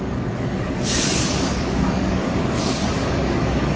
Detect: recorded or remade remade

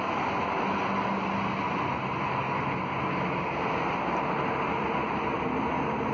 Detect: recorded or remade recorded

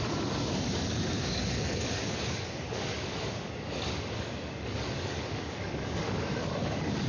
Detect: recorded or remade remade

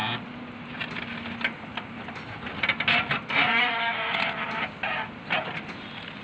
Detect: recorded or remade recorded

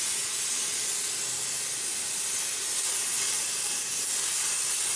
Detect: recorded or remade recorded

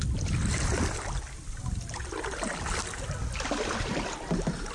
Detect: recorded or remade recorded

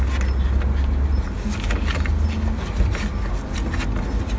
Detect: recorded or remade recorded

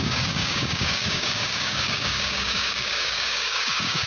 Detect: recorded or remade remade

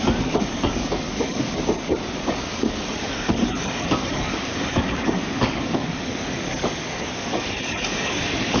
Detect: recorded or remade remade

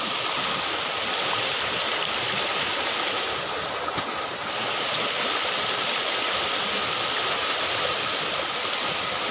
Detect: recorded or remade recorded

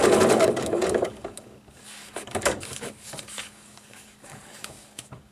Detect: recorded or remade remade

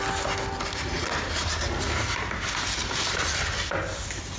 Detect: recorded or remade recorded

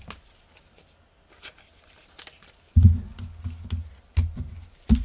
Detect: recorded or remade recorded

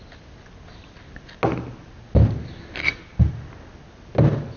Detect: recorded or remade recorded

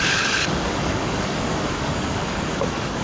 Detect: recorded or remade remade